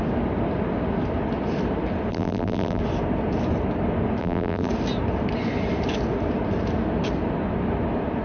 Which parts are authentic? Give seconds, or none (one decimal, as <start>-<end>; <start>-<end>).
0.0-2.1; 2.8-4.2; 4.7-8.2